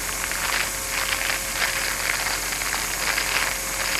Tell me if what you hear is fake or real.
real